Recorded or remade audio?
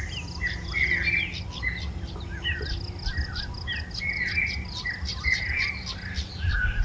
recorded